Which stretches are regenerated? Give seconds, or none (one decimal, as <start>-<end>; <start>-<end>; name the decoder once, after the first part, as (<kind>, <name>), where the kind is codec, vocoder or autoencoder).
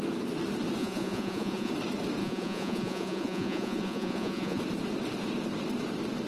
0.8-1.7 (vocoder, Vocos); 2.2-4.6